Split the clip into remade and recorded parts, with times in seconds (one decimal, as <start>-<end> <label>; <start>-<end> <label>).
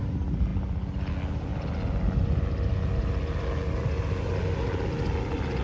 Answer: 0.0-5.6 recorded